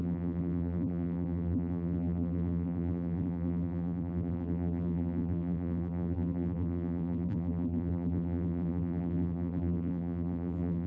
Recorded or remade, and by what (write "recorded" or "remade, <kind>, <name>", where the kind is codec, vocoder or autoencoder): remade, vocoder, BigVGAN v2